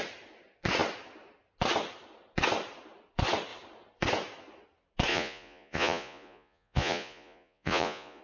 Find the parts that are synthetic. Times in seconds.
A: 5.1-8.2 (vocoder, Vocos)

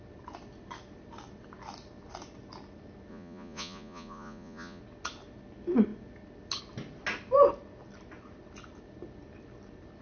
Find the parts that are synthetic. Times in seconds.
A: 3.1-4.8 (vocoder, Vocos)

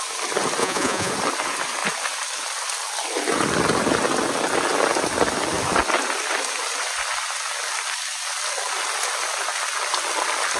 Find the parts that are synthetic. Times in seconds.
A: 0.6-1.1 (vocoder, Vocos)